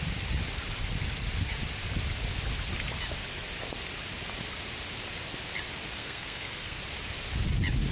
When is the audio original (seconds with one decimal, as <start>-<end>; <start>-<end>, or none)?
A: 0.0-6.0; 6.8-7.9